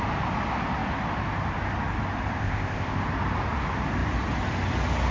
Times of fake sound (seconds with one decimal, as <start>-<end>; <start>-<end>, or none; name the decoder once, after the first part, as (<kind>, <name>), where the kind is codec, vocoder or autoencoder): 2.4-3.0 (codec, ZipCodec)